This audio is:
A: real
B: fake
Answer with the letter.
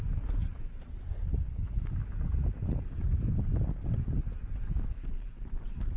A